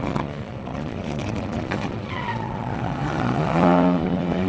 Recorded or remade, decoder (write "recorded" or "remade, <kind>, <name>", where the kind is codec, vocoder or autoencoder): remade, vocoder, Vocos